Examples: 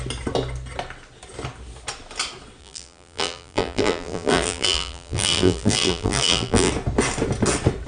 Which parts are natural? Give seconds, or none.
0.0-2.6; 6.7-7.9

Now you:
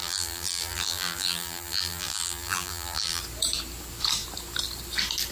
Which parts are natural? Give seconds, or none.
3.2-5.3